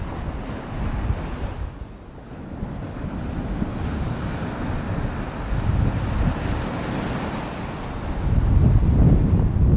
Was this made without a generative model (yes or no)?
yes